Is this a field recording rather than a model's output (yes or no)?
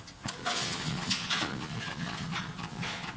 no